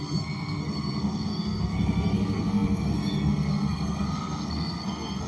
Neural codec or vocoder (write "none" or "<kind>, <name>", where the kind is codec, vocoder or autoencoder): codec, SNAC